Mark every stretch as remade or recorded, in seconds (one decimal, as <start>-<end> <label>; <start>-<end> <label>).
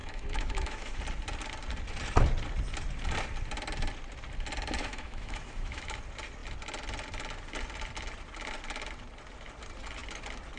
0.0-1.0 remade; 1.0-4.8 recorded; 4.8-6.0 remade; 6.0-10.6 recorded